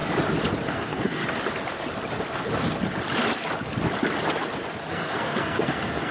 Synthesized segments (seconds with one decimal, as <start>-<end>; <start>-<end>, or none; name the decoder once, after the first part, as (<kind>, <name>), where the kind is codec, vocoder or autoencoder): 0.7-1.2 (codec, SNAC); 4.9-6.1